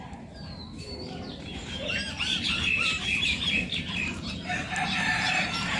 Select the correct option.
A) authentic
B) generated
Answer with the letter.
B